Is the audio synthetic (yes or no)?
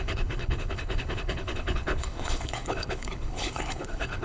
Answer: yes